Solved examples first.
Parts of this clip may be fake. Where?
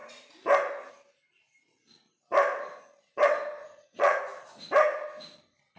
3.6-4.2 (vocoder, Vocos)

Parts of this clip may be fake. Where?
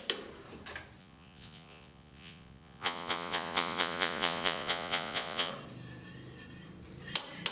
1.0-5.5 (vocoder, Vocos)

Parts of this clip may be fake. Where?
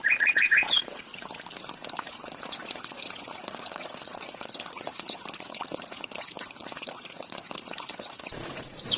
0.0-1.1 (vocoder, Vocos); 1.9-9.0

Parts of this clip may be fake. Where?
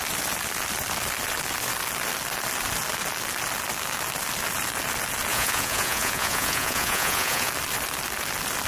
5.3-7.5 (vocoder, Vocos)